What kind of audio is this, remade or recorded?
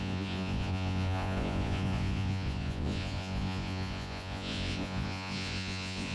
remade